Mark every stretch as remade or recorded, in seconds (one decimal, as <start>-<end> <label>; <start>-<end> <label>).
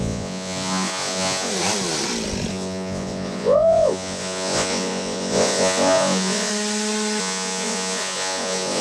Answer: 0.0-1.5 remade; 1.5-2.5 recorded; 2.5-6.5 remade; 6.5-7.2 recorded; 7.2-8.8 remade